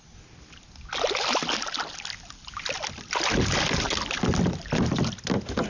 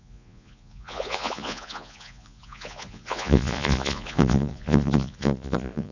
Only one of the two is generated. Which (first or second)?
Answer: second